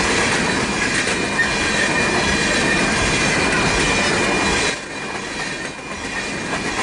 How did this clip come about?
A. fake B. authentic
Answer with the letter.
B